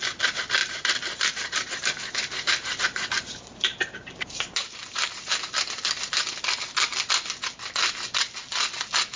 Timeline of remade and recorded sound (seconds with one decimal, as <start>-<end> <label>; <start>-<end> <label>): 0.0-0.6 recorded; 0.6-5.4 remade; 5.4-9.2 recorded